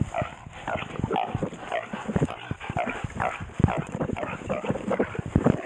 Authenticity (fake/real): real